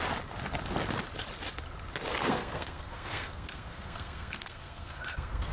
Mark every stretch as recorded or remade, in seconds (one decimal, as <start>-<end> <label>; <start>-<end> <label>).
0.0-2.1 recorded; 2.1-5.5 remade